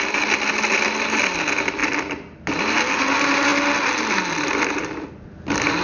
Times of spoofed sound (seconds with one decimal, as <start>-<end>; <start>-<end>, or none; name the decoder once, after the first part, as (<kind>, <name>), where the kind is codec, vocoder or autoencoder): none